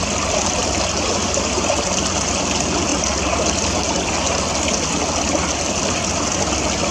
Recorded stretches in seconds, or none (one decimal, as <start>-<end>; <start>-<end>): 0.0-6.9